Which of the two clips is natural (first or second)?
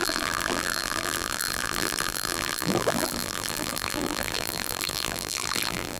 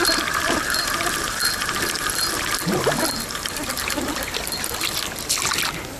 second